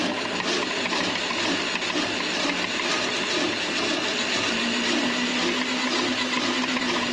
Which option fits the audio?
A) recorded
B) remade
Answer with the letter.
A